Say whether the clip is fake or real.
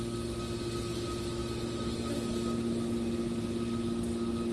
real